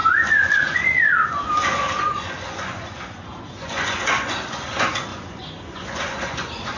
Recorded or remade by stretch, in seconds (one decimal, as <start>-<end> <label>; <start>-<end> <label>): 0.0-6.8 remade